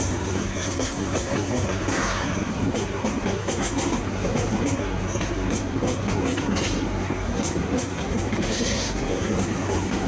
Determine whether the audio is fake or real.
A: fake